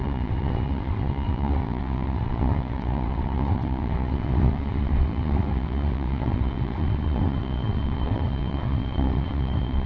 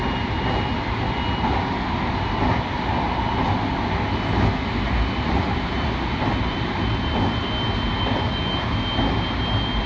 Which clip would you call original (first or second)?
second